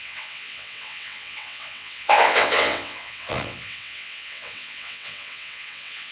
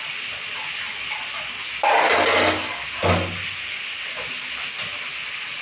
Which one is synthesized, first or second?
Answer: first